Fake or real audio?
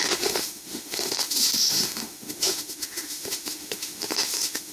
fake